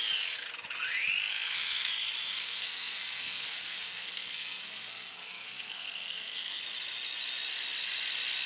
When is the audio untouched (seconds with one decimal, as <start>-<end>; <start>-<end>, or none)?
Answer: 0.0-1.3; 1.9-2.3; 6.6-8.5